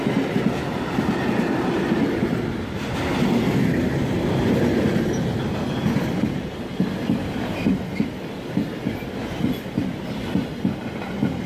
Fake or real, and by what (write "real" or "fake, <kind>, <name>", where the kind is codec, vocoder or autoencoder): real